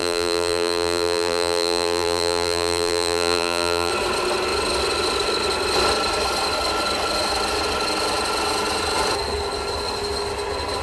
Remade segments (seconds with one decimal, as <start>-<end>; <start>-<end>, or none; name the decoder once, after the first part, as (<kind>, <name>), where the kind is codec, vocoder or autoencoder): 0.0-3.9 (vocoder, BigVGAN v2)